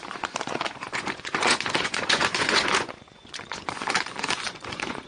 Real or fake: fake